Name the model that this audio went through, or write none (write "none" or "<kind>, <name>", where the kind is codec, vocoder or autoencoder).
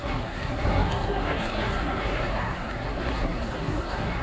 codec, SNAC